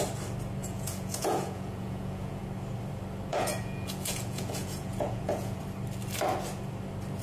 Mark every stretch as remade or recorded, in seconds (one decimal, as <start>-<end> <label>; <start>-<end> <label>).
0.0-0.6 recorded; 0.6-2.4 remade; 2.4-3.3 recorded; 3.3-5.6 remade; 5.6-7.2 recorded